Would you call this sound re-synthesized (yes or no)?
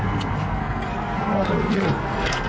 yes